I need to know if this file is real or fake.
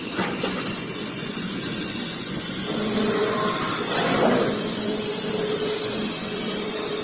fake